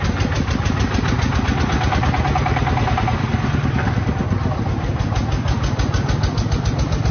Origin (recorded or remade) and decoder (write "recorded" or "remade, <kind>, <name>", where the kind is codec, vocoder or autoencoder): recorded